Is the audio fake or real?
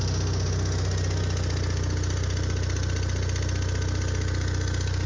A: real